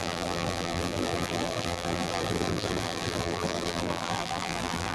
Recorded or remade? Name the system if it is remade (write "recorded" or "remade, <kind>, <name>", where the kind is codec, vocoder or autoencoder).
remade, vocoder, BigVGAN v2